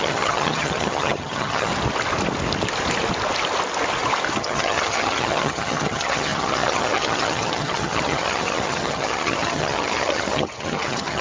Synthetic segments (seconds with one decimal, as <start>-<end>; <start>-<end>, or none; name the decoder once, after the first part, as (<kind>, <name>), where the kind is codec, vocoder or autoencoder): 0.0-1.7 (vocoder, HiFi-GAN); 4.3-11.2